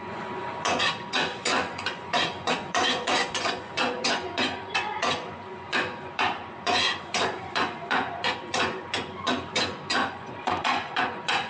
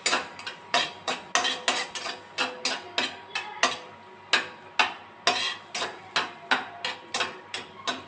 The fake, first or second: first